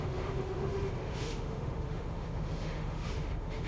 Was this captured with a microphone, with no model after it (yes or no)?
no